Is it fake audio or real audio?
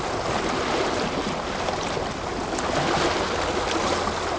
real